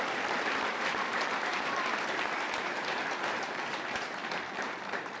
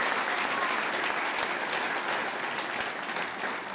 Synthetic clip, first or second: first